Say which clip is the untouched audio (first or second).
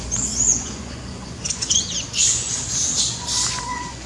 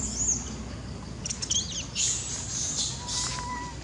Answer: second